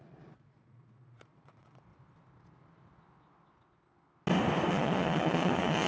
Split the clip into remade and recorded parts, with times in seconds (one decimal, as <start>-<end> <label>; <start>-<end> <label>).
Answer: 0.0-1.9 remade; 1.9-4.7 recorded; 4.7-5.9 remade